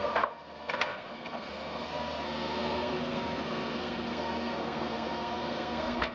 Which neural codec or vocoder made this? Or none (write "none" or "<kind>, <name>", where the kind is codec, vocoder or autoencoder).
codec, SNAC